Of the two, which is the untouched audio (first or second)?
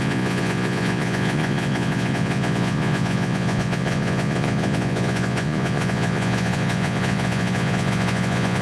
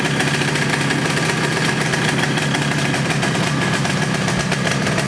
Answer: second